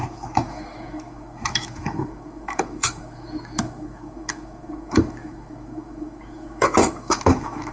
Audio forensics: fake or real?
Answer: fake